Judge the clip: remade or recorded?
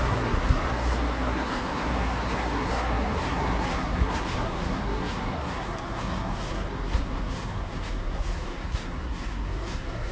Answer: remade